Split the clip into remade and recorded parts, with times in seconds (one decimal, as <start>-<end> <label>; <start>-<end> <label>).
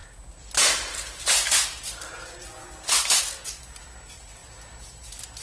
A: 0.0-5.4 recorded